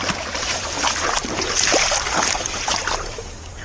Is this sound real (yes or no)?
no